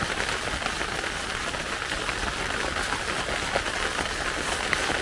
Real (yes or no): yes